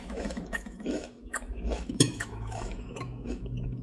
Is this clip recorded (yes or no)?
no